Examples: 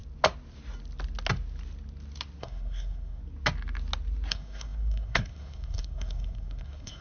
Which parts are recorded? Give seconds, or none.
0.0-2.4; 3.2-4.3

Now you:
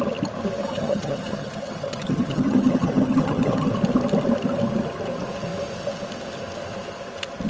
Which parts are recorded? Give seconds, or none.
0.0-0.6; 3.7-7.5

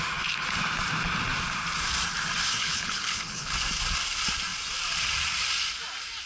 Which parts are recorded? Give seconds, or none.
0.0-2.6; 3.5-6.3

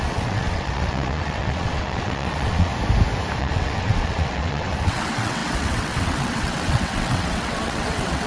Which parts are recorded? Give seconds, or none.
2.7-3.4